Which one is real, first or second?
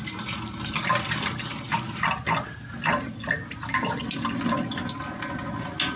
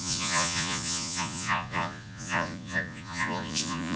first